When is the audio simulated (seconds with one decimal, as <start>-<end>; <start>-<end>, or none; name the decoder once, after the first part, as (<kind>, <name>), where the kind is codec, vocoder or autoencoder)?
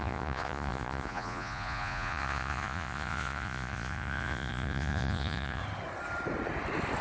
0.0-5.6 (vocoder, Vocos)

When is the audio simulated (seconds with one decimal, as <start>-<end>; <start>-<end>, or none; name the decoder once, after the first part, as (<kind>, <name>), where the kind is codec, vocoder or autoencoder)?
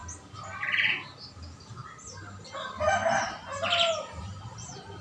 none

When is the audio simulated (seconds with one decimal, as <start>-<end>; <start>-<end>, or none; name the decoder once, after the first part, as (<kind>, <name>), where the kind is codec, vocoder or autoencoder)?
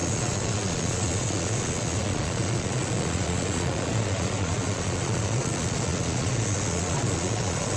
0.0-7.8 (vocoder, Vocos)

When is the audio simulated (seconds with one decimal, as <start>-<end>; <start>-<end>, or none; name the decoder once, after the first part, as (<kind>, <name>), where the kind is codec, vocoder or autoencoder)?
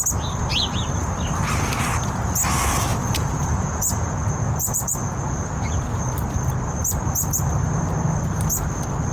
2.9-6.0 (vocoder, Vocos)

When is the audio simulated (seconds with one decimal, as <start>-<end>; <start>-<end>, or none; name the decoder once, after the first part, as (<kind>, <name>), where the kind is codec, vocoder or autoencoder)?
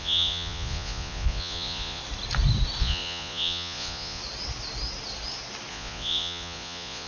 0.0-2.0 (vocoder, Vocos); 2.8-4.2; 5.7-7.1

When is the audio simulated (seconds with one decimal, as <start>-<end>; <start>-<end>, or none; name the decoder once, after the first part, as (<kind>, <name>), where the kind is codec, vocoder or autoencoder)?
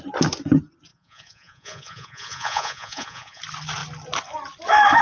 0.9-3.4 (vocoder, Vocos)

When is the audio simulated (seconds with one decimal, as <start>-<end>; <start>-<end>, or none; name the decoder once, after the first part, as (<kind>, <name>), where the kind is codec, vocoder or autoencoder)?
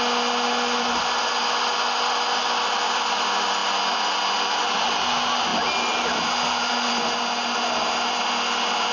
none